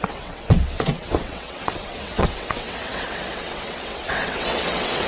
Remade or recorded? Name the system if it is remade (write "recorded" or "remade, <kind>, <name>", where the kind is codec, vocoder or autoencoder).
remade, vocoder, WaveNeXt